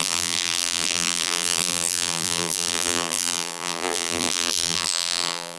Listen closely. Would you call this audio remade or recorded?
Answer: remade